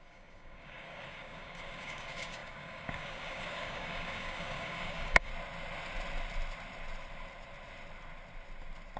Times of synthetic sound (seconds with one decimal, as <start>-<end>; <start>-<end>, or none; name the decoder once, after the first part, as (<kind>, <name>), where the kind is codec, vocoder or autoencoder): 0.0-5.3 (codec, DAC)